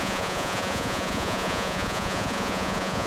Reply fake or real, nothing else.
fake